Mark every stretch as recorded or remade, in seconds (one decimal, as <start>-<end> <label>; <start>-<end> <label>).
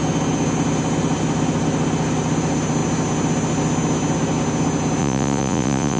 0.0-5.0 recorded; 5.0-6.0 remade